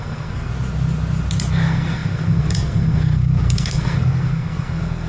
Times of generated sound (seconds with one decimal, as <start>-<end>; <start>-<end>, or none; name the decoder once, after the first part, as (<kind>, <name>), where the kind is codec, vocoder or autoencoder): 0.0-0.5 (codec, SNAC); 1.5-5.1